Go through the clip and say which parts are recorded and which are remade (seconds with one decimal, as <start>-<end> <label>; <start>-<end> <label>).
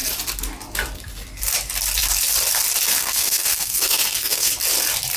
0.0-3.0 recorded; 3.0-4.5 remade; 4.5-5.2 recorded